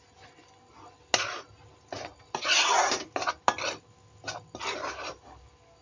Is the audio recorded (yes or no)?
yes